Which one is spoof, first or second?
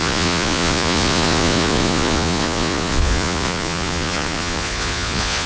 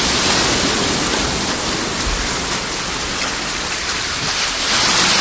first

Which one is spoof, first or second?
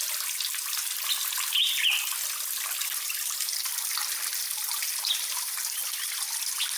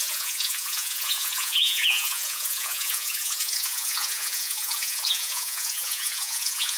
second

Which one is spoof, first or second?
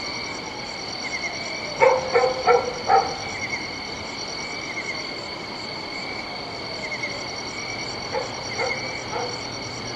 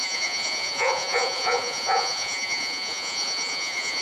second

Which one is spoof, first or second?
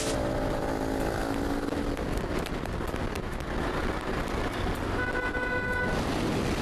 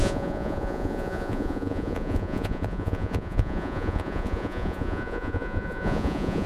second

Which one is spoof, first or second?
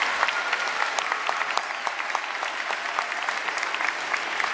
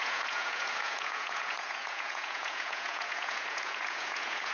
second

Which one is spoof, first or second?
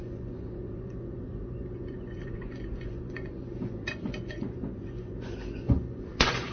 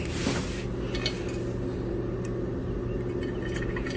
first